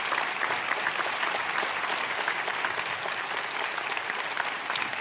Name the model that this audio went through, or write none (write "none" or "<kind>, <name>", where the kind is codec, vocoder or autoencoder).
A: vocoder, BigVGAN v2